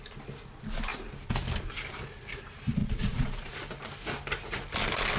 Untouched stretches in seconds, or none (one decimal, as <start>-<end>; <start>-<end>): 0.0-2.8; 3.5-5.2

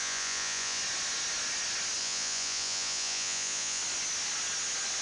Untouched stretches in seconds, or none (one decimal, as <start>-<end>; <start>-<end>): 0.8-2.0; 3.8-5.0

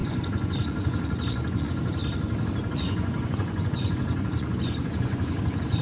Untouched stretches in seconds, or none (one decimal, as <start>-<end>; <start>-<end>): 2.0-2.7

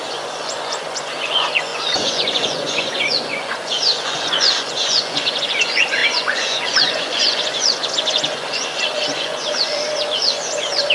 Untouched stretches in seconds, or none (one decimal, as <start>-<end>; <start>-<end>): none

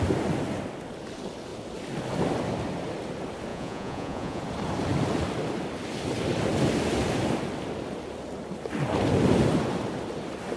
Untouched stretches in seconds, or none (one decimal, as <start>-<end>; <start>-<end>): 0.0-3.5; 4.4-10.6

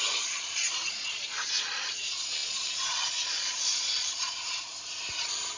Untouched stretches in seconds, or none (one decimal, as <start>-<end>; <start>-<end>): 4.7-5.6